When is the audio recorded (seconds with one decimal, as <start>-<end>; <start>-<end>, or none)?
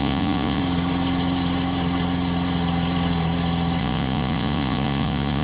0.6-3.8